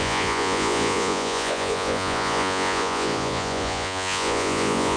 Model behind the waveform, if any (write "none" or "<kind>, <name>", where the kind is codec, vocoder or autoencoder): vocoder, Vocos